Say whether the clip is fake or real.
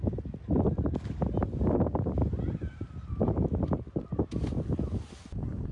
real